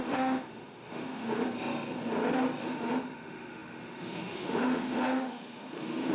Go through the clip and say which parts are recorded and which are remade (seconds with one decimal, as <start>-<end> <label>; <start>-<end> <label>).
0.0-1.4 remade; 1.4-2.6 recorded; 2.6-6.1 remade